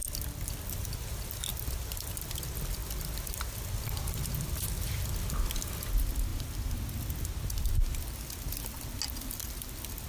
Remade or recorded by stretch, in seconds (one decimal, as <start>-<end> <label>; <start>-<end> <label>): 0.0-10.1 recorded